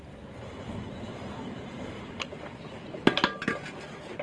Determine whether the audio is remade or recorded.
remade